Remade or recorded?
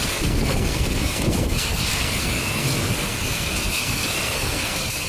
remade